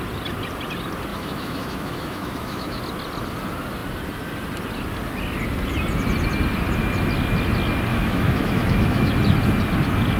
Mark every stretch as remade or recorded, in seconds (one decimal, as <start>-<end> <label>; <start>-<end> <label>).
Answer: 0.0-1.1 recorded; 1.1-2.8 remade; 2.8-7.9 recorded; 7.9-9.1 remade; 9.1-10.2 recorded